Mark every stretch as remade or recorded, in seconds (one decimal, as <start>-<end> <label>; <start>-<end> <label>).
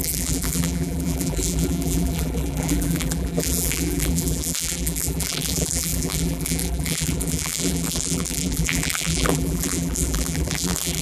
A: 0.0-11.0 remade